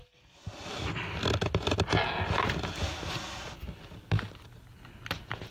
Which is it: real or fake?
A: real